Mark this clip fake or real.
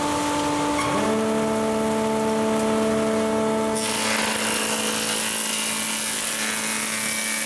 real